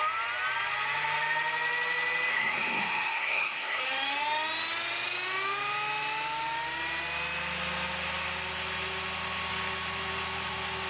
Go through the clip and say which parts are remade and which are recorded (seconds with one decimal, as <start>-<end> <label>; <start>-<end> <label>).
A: 0.0-2.3 recorded; 2.3-3.8 remade; 3.8-10.9 recorded